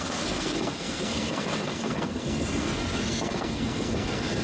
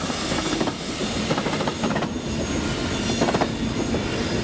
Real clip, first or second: second